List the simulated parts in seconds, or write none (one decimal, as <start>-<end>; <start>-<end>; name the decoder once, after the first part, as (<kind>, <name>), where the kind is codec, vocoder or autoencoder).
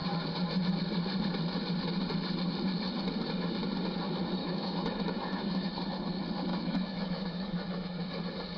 4.4-5.7 (autoencoder, DAC-VAE); 6.5-8.1